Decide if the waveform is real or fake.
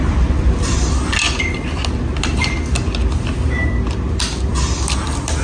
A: real